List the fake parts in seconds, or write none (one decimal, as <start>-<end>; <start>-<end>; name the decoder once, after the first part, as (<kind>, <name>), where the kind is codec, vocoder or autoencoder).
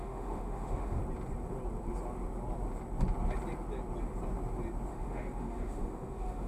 0.0-1.0 (autoencoder, DAC-VAE); 4.9-6.5